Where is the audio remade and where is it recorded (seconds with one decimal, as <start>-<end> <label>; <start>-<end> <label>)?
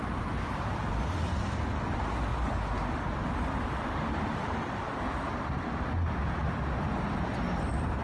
0.0-8.0 recorded